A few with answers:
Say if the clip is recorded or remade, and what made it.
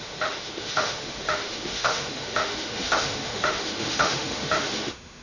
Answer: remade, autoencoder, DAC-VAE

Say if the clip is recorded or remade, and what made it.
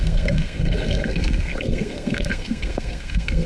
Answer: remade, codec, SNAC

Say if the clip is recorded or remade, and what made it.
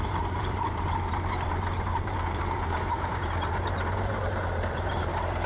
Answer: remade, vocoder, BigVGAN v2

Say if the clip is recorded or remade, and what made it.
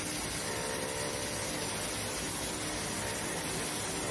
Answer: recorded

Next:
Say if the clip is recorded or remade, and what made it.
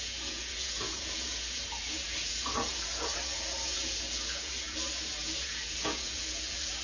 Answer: remade, vocoder, Vocos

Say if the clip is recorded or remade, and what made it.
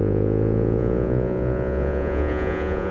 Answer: remade, vocoder, Vocos